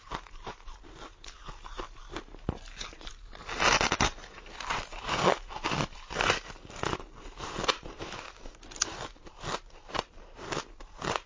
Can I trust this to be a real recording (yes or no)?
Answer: yes